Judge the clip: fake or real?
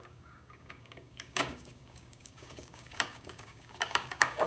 fake